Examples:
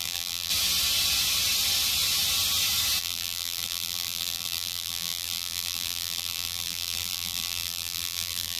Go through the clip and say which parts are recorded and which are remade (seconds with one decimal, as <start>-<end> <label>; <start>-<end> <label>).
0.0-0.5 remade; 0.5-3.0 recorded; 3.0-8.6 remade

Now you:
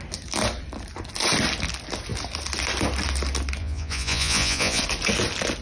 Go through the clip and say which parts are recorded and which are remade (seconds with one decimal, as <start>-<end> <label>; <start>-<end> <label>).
0.0-3.6 recorded; 3.6-4.8 remade; 4.8-5.6 recorded

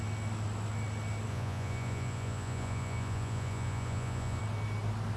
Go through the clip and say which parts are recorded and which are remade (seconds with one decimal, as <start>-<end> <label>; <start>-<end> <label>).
0.0-1.3 recorded; 1.3-4.4 remade; 4.4-5.2 recorded

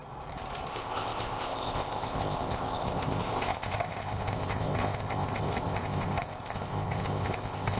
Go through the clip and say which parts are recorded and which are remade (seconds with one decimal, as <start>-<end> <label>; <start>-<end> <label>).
0.0-0.7 recorded; 0.7-7.8 remade